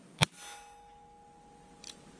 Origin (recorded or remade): recorded